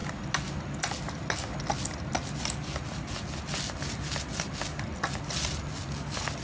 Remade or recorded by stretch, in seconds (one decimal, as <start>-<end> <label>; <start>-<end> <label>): 0.0-6.4 recorded